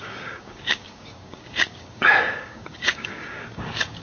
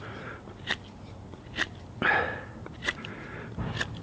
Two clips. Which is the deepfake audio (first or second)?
first